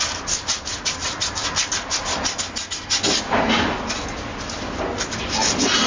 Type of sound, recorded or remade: recorded